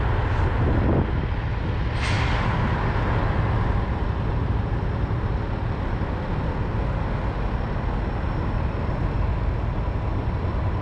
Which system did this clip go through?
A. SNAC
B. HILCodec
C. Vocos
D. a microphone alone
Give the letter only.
D